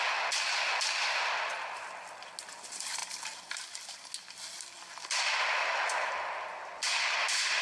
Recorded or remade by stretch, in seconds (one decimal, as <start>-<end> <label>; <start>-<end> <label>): 0.0-7.6 recorded